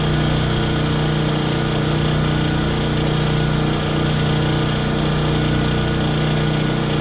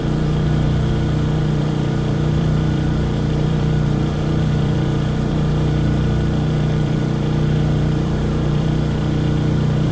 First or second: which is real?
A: first